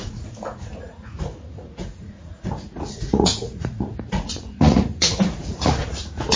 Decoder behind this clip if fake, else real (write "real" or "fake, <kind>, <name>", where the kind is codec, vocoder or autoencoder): fake, vocoder, Vocos